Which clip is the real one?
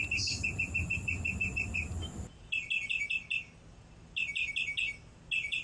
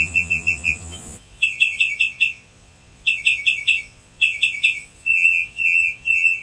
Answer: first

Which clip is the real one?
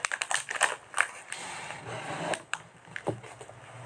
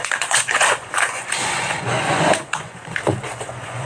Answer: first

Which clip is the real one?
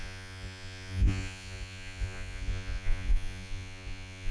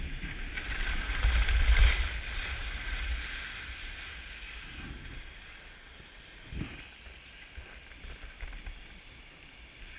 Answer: second